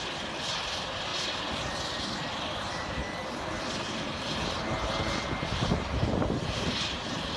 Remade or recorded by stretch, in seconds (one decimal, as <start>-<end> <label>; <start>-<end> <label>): 0.0-7.4 recorded